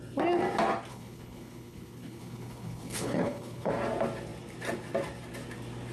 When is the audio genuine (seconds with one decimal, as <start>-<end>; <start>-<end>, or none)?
0.0-0.9; 3.7-5.9